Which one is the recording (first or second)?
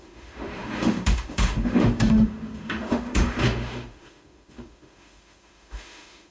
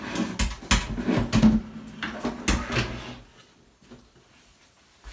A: second